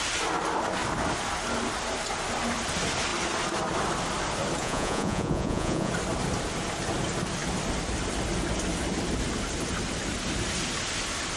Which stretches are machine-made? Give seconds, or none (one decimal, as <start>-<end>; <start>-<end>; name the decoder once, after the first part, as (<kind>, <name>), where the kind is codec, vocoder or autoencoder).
4.6-5.9 (vocoder, Vocos)